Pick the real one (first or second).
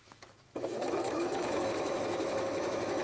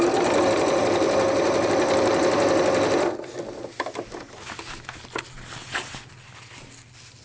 second